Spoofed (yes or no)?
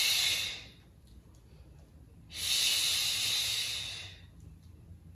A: no